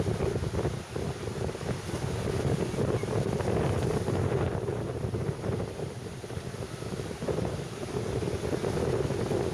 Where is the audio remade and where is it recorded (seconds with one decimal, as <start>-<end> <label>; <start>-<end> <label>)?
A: 0.0-3.0 recorded; 3.0-7.9 remade; 7.9-9.5 recorded